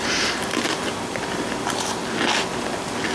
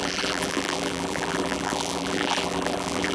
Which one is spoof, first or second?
second